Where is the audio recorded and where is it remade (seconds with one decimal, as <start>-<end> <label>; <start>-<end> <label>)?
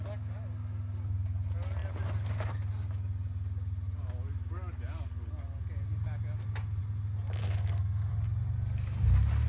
0.0-7.4 recorded; 7.4-8.1 remade; 8.1-9.5 recorded